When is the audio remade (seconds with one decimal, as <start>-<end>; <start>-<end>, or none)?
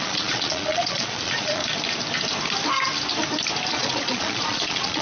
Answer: 0.0-1.6; 3.7-5.0